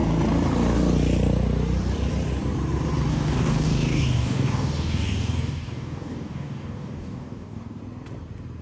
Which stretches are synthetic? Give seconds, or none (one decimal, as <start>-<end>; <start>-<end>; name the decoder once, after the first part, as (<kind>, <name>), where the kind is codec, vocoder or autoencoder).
3.1-7.8 (codec, DAC)